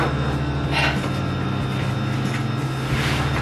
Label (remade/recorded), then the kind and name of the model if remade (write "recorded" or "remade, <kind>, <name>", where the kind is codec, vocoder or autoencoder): recorded